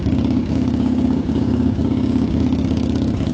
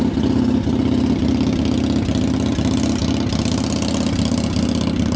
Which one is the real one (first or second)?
second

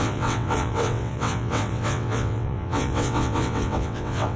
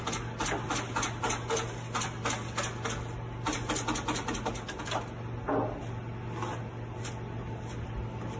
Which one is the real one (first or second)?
second